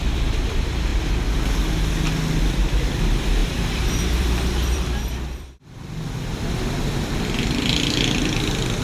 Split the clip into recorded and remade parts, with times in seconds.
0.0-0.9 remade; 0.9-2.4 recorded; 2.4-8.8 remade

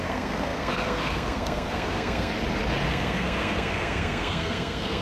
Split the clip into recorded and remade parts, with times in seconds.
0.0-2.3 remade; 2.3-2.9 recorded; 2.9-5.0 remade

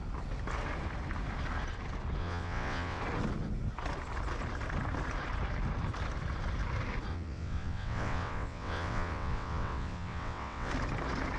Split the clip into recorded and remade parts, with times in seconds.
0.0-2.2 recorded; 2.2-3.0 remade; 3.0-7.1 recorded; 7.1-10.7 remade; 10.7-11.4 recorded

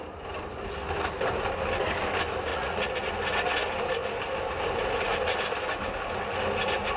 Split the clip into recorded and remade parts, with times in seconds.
0.0-2.5 recorded; 2.5-3.1 remade; 3.1-7.0 recorded

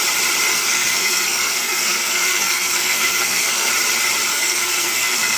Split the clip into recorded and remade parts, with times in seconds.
0.0-0.5 recorded; 0.5-3.7 remade; 3.7-4.3 recorded; 4.3-5.4 remade

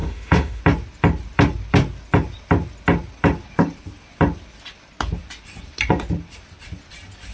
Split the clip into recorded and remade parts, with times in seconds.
0.0-0.6 remade; 0.6-7.3 recorded

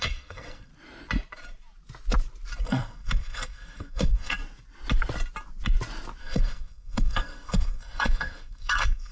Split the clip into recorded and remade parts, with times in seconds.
0.0-0.7 remade; 0.7-2.6 recorded; 2.6-4.4 remade; 4.4-6.2 recorded; 6.2-9.1 remade

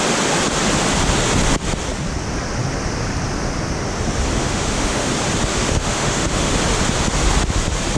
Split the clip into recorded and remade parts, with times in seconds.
0.0-4.4 recorded; 4.4-5.1 remade; 5.1-5.5 recorded; 5.5-6.5 remade; 6.5-8.0 recorded